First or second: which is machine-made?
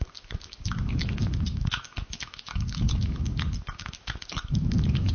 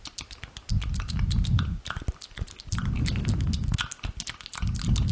first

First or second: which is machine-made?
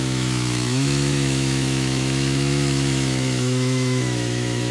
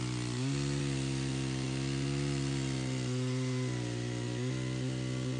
first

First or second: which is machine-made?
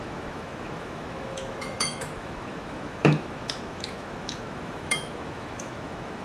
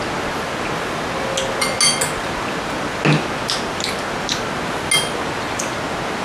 first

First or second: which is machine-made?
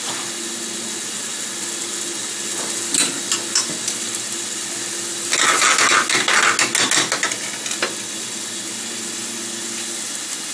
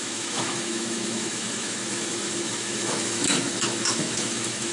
second